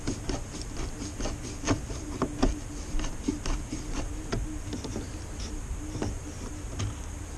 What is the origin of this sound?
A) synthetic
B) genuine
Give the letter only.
B